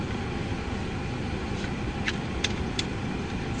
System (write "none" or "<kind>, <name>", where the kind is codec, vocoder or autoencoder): vocoder, BigVGAN v2